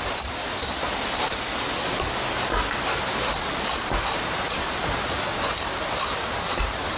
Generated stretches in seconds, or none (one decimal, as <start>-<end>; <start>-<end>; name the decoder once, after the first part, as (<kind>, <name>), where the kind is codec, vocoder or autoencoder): none